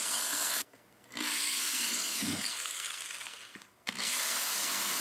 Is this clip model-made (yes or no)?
yes